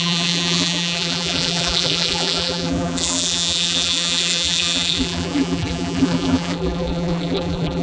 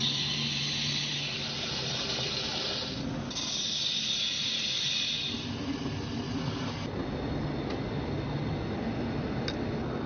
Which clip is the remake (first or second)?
first